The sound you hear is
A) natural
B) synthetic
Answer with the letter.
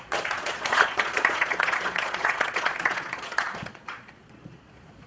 B